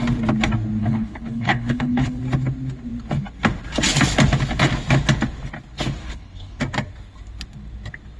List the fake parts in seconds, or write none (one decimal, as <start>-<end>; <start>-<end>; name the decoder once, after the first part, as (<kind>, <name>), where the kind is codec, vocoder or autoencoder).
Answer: 0.8-2.2 (codec, HILCodec); 6.0-6.6